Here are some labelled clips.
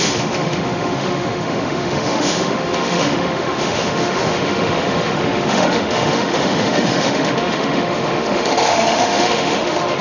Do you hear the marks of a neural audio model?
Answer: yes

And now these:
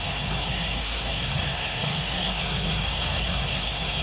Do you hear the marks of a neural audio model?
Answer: yes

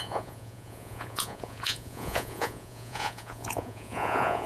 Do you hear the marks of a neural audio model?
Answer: yes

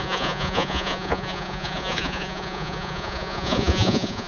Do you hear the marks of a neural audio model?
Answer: yes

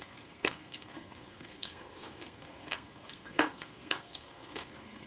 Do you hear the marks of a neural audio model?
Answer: yes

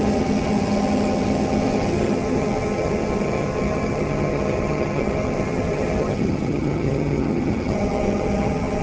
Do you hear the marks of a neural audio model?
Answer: yes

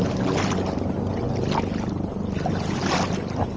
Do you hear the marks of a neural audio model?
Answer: no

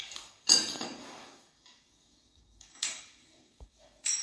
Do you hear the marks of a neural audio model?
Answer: yes